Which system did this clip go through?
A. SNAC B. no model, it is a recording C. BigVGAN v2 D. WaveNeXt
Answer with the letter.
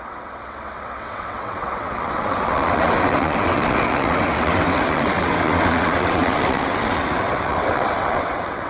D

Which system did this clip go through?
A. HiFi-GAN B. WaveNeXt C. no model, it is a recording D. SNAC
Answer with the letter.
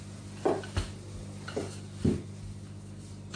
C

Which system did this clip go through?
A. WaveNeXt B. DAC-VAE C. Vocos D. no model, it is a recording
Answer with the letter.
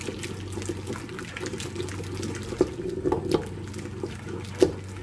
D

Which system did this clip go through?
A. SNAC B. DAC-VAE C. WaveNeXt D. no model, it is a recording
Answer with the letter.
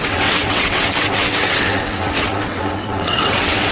C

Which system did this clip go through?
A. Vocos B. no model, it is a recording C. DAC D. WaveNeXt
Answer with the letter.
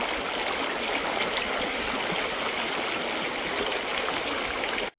B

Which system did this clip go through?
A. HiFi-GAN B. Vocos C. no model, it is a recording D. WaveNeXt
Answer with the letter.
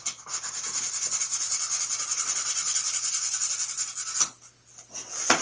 C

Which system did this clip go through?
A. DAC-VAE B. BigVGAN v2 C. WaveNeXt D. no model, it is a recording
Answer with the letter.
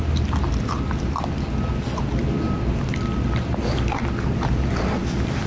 D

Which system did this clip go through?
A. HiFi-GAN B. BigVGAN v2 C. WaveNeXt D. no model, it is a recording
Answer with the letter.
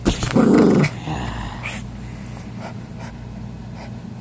D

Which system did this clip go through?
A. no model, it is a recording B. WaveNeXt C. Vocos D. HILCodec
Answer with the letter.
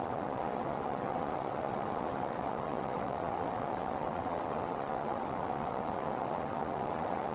B